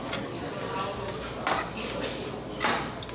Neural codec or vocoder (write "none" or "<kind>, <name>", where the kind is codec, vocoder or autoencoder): none